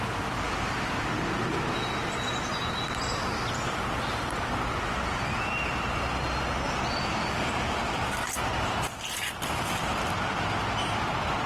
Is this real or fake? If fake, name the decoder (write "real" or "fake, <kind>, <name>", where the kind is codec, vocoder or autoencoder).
real